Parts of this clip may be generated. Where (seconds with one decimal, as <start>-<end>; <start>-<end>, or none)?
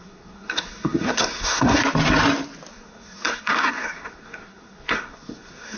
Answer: 0.0-1.8; 2.7-5.8